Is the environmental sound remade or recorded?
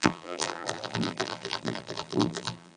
remade